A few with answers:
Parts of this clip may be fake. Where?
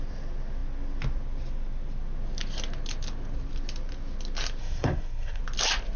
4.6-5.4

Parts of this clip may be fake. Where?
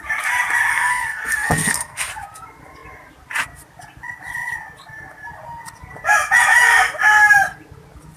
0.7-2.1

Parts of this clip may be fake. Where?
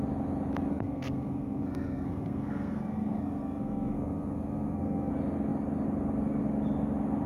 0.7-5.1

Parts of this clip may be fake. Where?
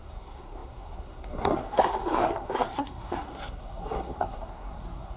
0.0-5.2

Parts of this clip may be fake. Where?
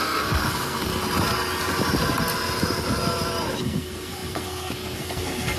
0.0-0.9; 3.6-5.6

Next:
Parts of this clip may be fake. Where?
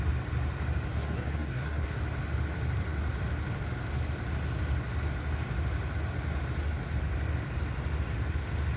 0.9-2.0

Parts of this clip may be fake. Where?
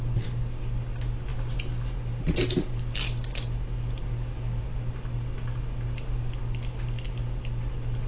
none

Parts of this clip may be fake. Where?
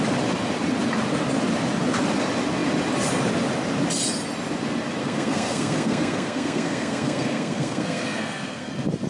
5.0-8.7